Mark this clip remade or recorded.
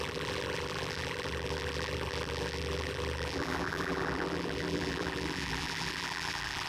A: remade